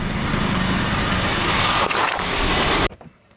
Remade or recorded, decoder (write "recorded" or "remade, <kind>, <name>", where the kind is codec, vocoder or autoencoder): recorded